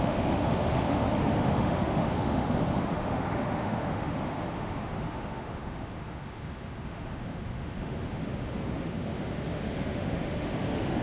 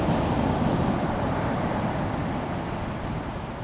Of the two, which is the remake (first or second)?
first